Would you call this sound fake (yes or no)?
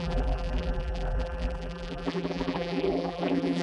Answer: yes